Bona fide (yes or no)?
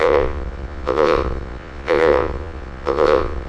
no